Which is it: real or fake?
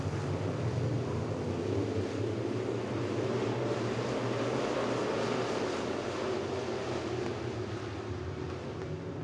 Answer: real